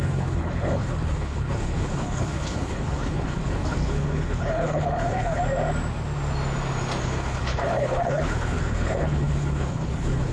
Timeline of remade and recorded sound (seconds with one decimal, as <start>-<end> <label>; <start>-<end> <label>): 0.0-5.4 remade; 5.4-7.0 recorded; 7.0-10.3 remade